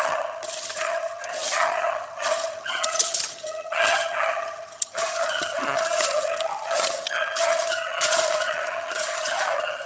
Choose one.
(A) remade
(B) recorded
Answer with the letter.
A